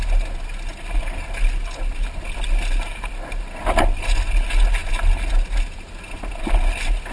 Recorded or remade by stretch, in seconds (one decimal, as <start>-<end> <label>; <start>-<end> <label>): 0.0-7.1 recorded